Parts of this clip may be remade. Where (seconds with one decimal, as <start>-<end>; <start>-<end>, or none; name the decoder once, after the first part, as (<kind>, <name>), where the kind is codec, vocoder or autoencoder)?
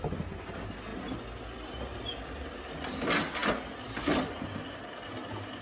none